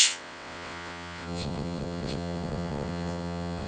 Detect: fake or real fake